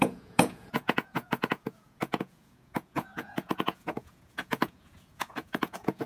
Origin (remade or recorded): remade